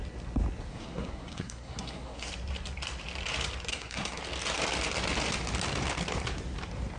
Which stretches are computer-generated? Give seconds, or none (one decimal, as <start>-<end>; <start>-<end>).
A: 0.7-2.3; 3.7-4.2

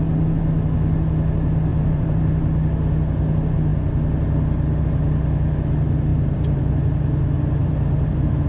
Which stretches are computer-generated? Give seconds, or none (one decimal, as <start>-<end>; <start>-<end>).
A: 1.7-2.2; 6.1-6.7; 7.6-8.5

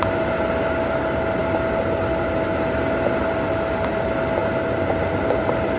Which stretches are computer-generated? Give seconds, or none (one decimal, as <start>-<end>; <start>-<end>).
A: none

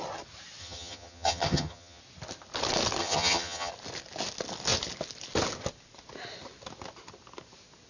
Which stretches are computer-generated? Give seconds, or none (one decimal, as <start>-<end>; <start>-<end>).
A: 0.6-2.0; 3.0-3.7

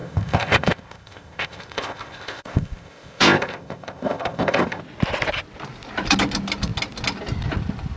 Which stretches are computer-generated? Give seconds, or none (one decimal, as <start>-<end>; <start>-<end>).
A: 0.0-4.8

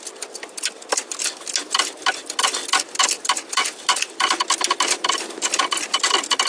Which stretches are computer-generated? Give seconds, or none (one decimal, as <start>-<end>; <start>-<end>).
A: none